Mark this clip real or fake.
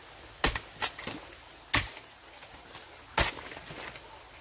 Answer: real